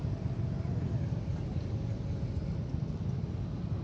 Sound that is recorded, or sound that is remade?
recorded